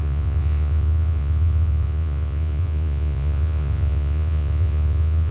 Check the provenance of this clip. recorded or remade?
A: remade